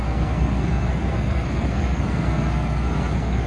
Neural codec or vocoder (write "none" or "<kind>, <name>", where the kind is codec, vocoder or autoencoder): codec, SNAC